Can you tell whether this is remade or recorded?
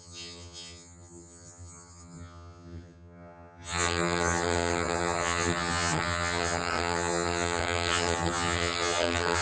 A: remade